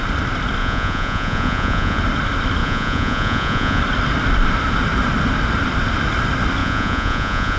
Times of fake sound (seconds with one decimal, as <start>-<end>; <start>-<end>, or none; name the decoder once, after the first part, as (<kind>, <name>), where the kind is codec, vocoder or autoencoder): 0.6-2.0 (vocoder, Vocos); 2.6-3.8; 6.6-7.6